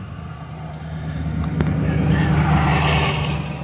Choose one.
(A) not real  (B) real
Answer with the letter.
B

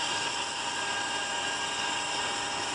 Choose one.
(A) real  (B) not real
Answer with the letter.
A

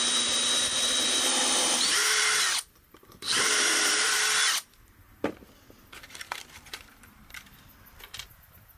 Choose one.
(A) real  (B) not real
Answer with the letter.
B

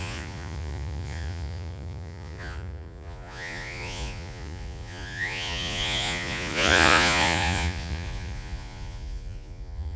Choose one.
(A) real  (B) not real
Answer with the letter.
B